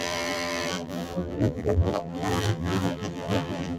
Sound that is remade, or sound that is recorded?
remade